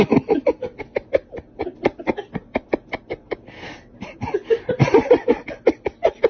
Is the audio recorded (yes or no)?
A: yes